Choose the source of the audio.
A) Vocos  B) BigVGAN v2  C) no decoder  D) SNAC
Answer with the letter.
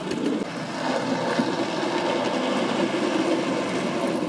C